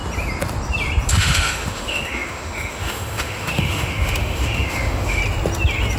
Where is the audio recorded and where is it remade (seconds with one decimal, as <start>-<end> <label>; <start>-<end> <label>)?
0.0-1.1 recorded; 1.1-5.2 remade; 5.2-6.0 recorded